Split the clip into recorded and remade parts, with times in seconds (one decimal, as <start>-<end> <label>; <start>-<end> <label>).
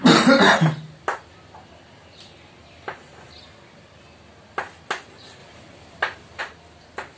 0.0-7.2 recorded